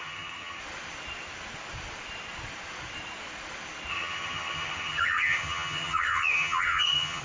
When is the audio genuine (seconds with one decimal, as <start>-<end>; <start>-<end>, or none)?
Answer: 0.6-3.9